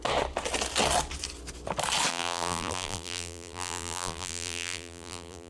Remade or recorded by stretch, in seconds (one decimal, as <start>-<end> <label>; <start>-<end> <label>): 0.0-2.1 recorded; 2.1-5.5 remade